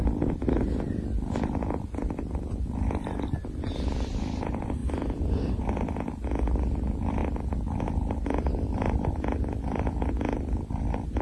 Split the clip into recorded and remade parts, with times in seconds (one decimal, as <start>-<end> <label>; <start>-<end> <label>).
0.0-11.2 recorded